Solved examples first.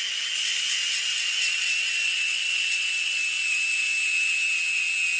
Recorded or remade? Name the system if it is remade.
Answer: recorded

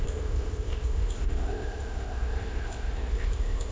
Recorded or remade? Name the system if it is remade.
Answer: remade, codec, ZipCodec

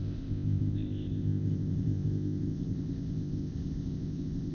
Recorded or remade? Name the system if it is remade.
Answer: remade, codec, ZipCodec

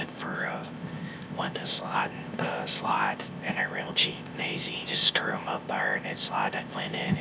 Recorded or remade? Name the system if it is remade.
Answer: remade, codec, ZipCodec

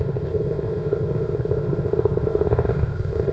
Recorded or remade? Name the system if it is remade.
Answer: remade, codec, ZipCodec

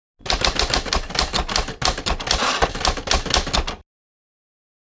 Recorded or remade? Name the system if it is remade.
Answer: recorded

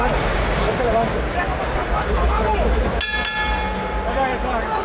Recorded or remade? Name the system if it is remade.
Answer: recorded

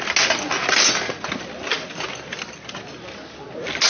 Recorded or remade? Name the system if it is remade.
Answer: recorded